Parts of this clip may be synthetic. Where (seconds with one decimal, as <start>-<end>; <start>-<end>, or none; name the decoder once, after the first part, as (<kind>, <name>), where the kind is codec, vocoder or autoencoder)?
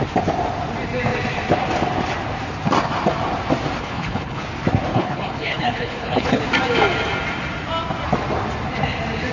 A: 3.8-4.4 (codec, HILCodec); 4.9-6.4